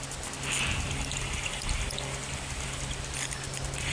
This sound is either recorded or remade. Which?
recorded